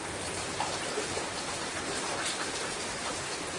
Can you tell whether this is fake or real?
fake